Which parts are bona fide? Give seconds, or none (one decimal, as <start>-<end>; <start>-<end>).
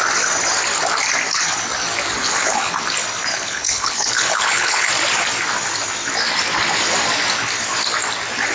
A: 0.0-2.2; 2.8-3.3; 4.9-8.5